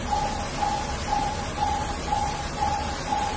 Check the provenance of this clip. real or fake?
real